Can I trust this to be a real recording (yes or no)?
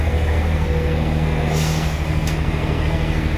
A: no